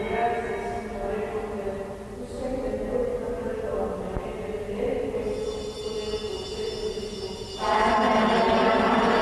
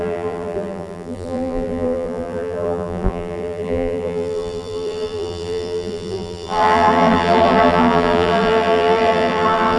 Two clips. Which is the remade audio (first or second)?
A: second